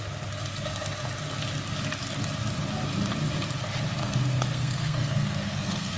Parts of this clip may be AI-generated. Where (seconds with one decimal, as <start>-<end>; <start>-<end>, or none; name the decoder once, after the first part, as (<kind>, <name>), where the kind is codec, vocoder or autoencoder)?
4.0-6.0 (codec, SNAC)